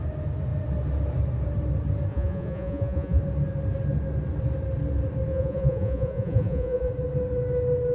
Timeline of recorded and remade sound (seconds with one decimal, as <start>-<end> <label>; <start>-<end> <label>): 0.0-2.1 recorded; 2.1-3.2 remade; 3.2-5.3 recorded; 5.3-6.9 remade; 6.9-7.9 recorded